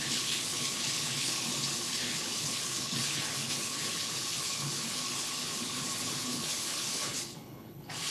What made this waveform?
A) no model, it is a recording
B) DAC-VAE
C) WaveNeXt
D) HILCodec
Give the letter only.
D